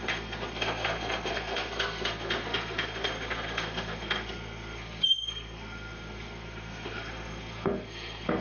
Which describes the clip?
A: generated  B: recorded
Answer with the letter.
A